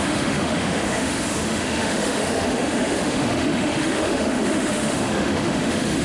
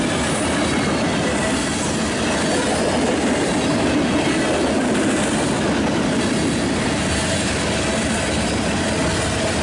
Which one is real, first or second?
second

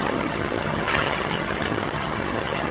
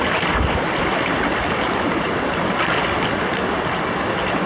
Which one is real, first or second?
second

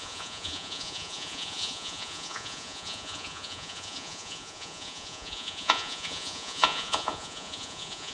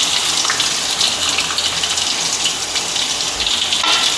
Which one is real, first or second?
second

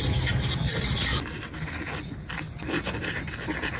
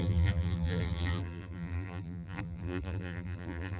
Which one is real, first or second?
first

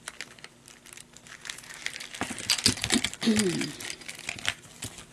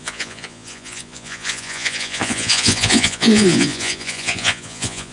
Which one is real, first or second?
first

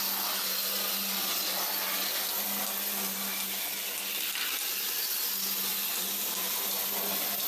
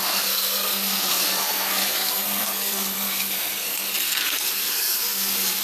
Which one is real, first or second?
first